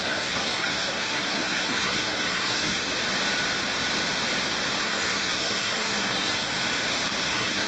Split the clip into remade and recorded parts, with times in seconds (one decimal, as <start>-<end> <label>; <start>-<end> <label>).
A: 0.0-2.9 remade; 2.9-4.8 recorded; 4.8-6.5 remade; 6.5-7.2 recorded; 7.2-7.7 remade